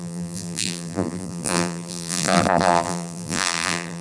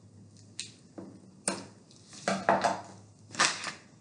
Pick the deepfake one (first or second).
first